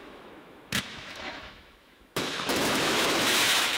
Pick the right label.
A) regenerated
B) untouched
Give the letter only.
A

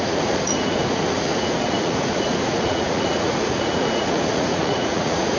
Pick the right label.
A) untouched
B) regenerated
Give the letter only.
B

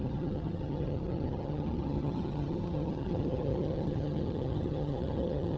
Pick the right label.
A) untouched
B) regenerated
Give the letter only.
B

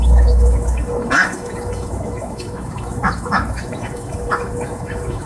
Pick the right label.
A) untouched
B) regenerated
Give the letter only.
B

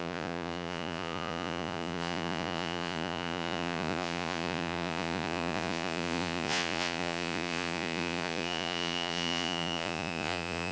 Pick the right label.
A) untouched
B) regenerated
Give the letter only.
B